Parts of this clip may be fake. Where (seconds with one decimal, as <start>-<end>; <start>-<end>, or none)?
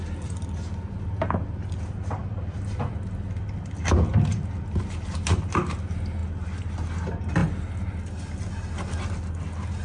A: 2.2-2.9